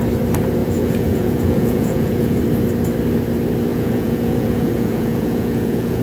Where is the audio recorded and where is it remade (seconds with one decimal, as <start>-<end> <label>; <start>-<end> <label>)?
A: 0.0-0.6 recorded; 0.6-2.4 remade; 2.4-3.7 recorded; 3.7-6.0 remade